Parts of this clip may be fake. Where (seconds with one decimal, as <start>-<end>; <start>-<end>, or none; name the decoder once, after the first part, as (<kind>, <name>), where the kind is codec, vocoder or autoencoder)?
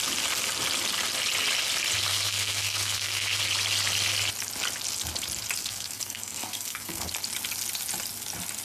2.1-3.4 (codec, SNAC); 5.6-7.1